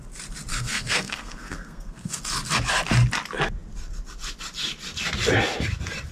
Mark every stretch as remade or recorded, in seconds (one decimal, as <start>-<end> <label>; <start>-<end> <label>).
0.0-0.5 recorded; 0.5-2.2 remade; 2.2-6.1 recorded